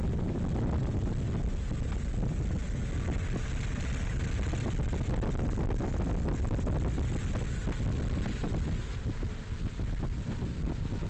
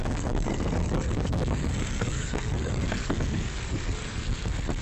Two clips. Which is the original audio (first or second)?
first